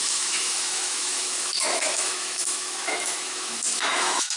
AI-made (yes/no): yes